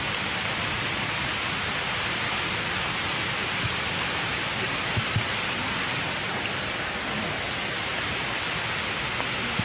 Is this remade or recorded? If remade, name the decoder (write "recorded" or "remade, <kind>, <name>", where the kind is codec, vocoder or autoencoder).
recorded